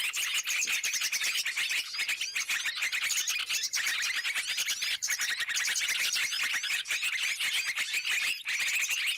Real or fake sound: real